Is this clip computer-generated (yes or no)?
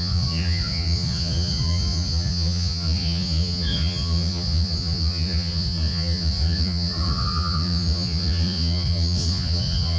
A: yes